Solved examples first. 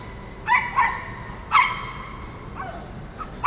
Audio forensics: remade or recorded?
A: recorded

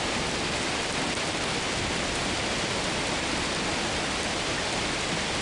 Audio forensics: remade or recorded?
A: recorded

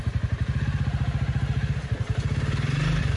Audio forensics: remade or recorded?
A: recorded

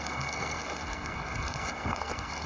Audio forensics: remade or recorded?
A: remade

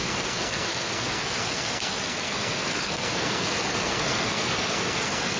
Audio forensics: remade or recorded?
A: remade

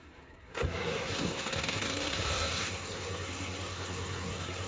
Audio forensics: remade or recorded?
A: remade